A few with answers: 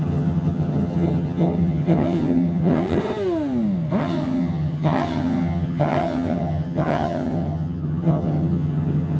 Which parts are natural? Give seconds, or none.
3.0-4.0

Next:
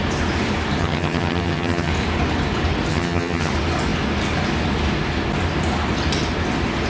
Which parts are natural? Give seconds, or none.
0.0-0.8; 1.9-2.9; 3.5-6.9